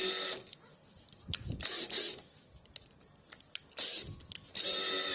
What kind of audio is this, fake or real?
real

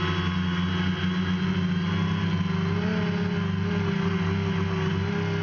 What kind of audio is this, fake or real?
real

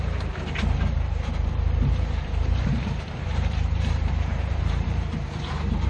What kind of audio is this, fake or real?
fake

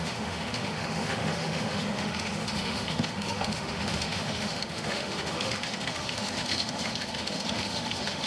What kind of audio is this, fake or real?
fake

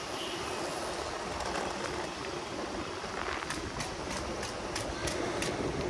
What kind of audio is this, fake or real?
real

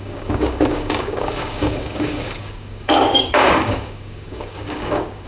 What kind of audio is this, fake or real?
fake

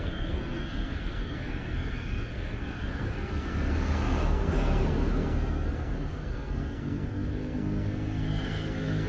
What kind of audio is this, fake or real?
fake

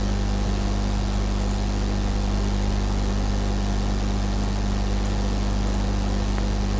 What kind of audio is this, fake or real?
real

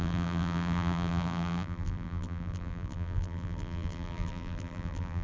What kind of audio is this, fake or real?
fake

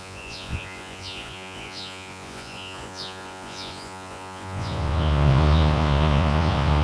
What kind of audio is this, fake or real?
fake